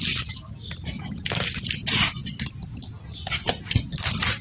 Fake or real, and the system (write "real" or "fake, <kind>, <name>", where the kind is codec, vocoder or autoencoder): real